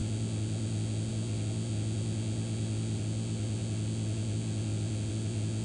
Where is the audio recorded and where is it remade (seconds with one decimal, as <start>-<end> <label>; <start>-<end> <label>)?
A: 0.0-5.6 recorded